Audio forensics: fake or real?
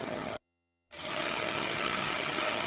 fake